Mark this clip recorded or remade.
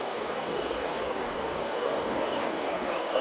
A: remade